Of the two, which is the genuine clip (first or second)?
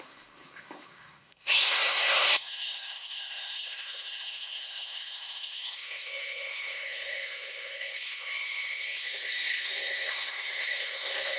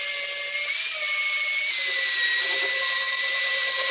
second